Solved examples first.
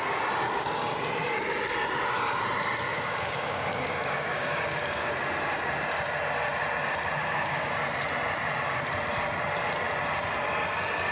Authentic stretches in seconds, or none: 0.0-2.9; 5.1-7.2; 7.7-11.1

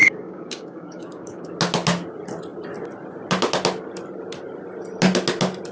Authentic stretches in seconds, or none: 1.5-5.7

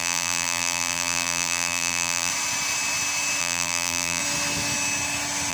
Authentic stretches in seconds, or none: 2.3-3.4; 4.2-5.5

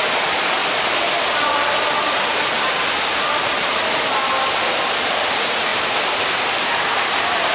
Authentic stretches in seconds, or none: 0.6-5.1

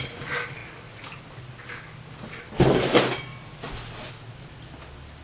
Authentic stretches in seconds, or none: 0.0-5.2

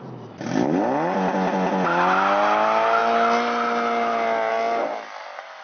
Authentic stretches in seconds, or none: 0.0-5.6

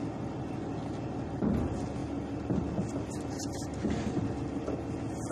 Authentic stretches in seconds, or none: 0.0-5.3